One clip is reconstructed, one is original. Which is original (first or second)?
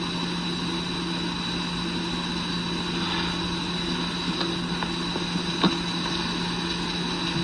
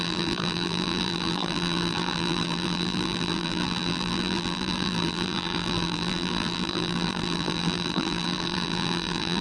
first